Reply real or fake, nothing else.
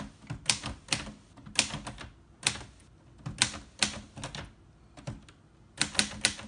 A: real